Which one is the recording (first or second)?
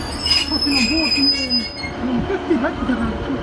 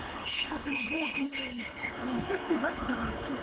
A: first